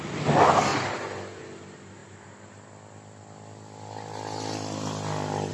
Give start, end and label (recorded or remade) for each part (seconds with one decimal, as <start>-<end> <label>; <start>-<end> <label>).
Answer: 0.0-5.5 recorded